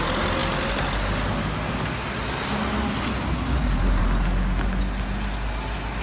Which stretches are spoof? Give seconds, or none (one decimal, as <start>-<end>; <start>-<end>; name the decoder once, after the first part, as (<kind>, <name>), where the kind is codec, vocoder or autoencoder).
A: none